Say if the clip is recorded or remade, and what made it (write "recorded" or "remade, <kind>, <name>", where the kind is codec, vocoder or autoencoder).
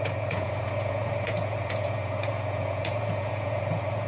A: remade, vocoder, Vocos